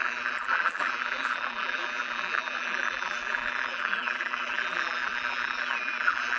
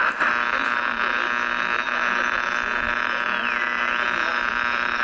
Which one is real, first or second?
second